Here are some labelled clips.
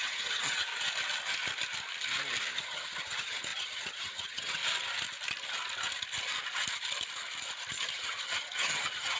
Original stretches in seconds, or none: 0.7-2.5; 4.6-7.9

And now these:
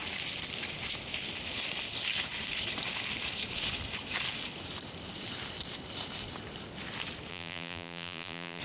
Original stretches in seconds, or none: 0.0-7.3